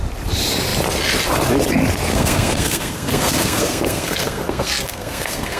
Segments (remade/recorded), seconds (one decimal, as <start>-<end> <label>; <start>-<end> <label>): 0.0-2.1 recorded; 2.1-5.6 remade